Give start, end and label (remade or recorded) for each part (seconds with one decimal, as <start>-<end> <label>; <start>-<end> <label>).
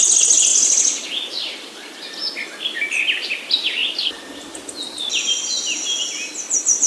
0.0-6.9 recorded